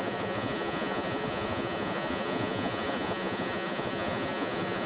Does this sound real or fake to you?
fake